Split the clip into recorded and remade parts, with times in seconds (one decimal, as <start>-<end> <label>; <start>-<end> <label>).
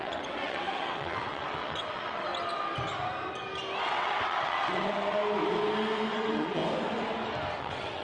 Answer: 0.0-2.3 remade; 2.3-3.8 recorded; 3.8-5.2 remade; 5.2-6.1 recorded; 6.1-6.6 remade; 6.6-7.6 recorded; 7.6-8.0 remade